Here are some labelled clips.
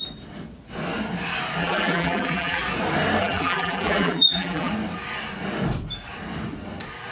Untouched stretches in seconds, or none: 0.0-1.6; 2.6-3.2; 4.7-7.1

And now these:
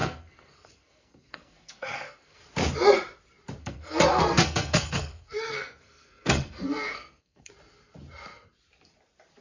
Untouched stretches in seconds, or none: 2.4-3.6; 7.5-9.4